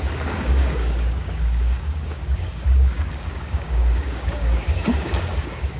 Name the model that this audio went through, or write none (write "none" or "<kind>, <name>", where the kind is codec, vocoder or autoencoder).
codec, DAC